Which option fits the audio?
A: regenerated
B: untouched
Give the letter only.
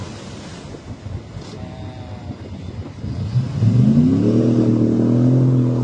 B